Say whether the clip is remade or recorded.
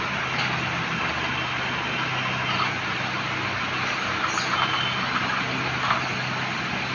recorded